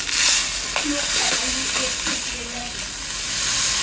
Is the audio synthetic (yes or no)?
no